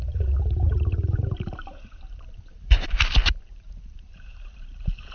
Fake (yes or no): yes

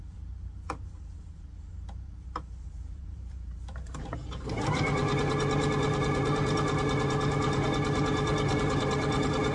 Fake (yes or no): yes